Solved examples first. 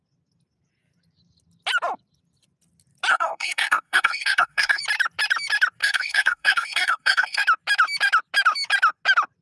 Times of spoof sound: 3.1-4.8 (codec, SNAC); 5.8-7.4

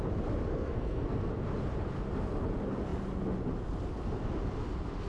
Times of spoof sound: 0.5-1.3 (codec, SNAC)

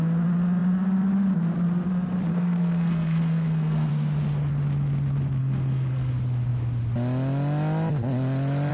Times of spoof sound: 2.3-3.9 (codec, SNAC); 5.4-6.1

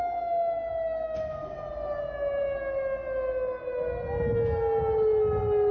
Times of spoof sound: none

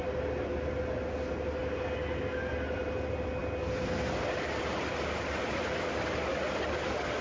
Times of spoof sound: none

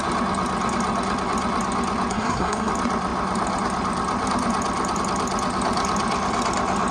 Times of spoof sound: 2.1-2.7 (codec, SNAC)

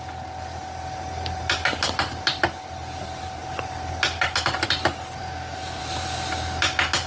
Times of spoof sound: none

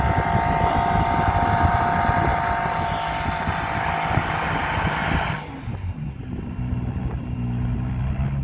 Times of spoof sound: 0.0-2.3 (vocoder, BigVGAN v2); 4.1-8.4